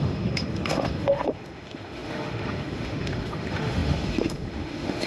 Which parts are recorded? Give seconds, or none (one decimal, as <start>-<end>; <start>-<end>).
none